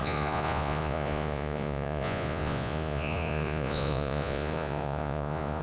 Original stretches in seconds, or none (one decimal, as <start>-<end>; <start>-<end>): none